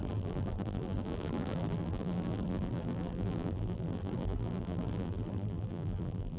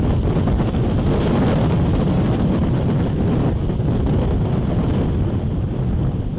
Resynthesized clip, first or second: first